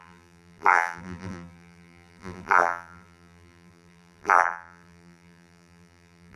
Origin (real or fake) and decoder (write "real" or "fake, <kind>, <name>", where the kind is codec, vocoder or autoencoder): fake, vocoder, BigVGAN v2